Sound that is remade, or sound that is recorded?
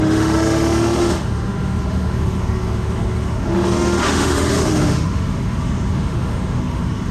remade